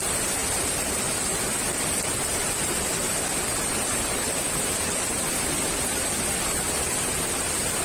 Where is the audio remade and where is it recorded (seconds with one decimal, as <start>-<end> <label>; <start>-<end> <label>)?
0.0-7.8 recorded